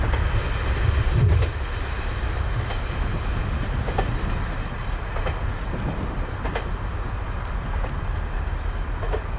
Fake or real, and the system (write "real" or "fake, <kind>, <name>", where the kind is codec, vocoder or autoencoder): real